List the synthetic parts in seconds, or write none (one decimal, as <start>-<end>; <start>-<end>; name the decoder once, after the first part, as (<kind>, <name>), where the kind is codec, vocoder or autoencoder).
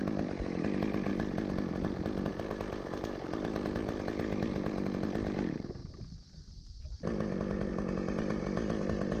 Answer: none